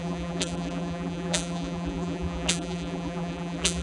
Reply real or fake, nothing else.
fake